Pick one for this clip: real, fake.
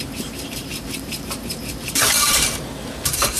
fake